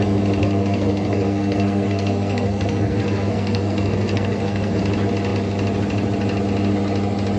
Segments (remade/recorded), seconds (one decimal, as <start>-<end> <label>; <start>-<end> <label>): 0.0-0.4 recorded; 0.4-4.8 remade; 4.8-7.4 recorded